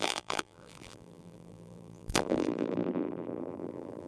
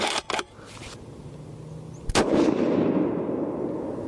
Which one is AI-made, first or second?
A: first